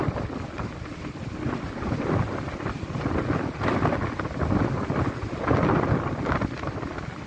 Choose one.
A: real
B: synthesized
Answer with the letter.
A